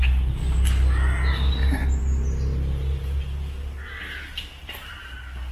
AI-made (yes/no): no